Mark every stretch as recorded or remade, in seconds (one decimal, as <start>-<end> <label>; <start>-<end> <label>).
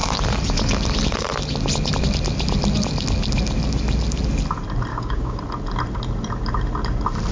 0.0-4.9 recorded; 4.9-5.4 remade; 5.4-7.3 recorded